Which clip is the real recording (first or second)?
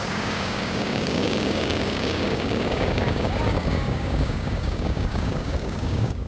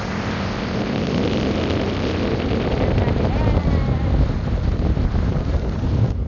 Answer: second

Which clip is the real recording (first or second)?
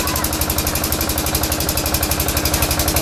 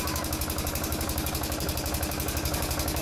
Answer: first